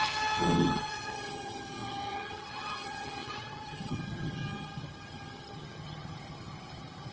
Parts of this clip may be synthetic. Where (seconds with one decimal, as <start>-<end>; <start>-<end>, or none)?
0.0-7.1